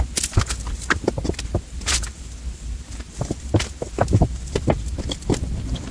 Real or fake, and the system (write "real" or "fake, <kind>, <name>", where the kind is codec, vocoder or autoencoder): real